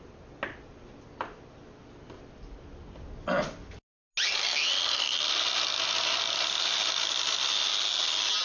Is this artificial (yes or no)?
no